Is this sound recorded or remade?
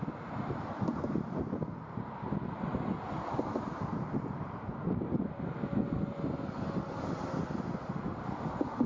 recorded